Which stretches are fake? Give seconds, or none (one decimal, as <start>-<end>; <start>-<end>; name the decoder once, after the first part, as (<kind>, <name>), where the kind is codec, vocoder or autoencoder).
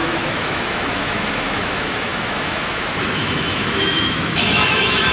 0.0-5.1 (autoencoder, DAC-VAE)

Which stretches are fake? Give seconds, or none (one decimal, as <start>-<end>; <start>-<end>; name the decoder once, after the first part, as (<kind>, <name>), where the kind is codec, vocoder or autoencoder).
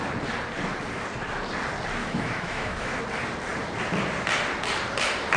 2.0-3.0 (autoencoder, DAC-VAE)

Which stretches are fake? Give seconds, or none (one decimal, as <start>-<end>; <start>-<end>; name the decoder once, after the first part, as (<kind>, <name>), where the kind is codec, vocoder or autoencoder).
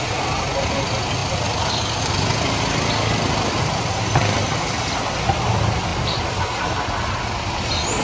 none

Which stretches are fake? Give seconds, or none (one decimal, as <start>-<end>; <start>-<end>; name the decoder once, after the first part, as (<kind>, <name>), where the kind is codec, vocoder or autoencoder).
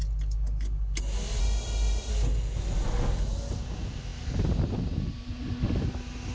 1.4-2.1 (autoencoder, DAC-VAE)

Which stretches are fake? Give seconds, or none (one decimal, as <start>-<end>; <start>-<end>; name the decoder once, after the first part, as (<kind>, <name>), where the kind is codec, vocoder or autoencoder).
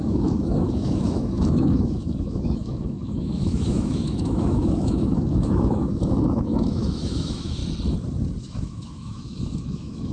0.0-7.6 (autoencoder, DAC-VAE); 8.4-10.1